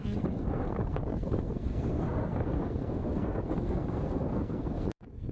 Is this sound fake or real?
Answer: fake